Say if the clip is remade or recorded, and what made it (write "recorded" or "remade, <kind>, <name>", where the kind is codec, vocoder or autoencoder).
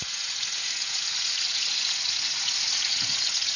remade, vocoder, Vocos